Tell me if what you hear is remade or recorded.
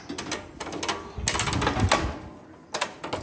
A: recorded